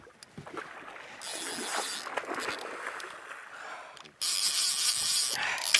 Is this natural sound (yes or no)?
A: yes